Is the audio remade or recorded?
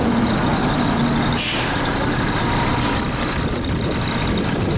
recorded